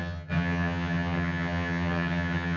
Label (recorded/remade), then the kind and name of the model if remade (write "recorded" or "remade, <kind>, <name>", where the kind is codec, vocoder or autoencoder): remade, vocoder, HiFi-GAN